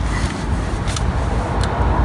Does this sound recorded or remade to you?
recorded